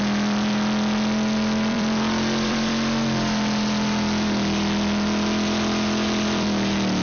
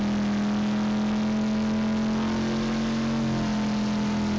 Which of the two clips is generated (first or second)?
first